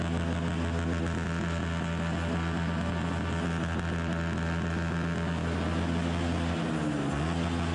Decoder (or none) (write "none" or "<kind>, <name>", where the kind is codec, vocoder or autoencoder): none